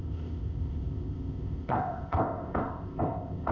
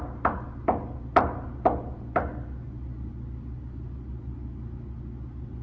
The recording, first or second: second